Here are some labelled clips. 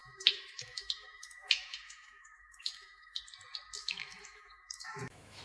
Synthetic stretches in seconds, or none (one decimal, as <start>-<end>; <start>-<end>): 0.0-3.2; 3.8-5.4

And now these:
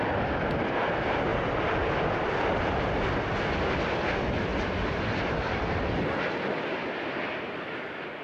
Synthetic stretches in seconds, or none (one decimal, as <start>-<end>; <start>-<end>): none

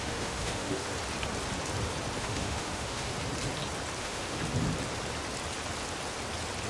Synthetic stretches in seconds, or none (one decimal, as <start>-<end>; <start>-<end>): 0.0-0.9; 2.2-3.1; 4.0-4.4

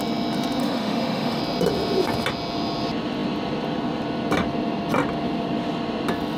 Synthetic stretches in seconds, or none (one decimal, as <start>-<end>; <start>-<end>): 0.6-1.4

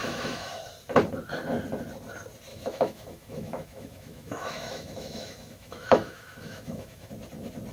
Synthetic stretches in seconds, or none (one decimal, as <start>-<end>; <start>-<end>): 0.0-0.6; 2.5-7.1

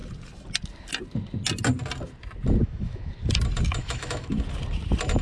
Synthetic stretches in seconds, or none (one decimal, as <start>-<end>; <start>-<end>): 2.6-3.1; 3.8-4.3